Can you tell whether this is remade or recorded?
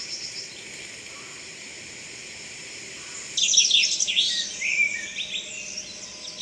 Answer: recorded